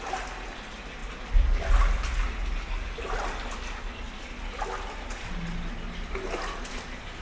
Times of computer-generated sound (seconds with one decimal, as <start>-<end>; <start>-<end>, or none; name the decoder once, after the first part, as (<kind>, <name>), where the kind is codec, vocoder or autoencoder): none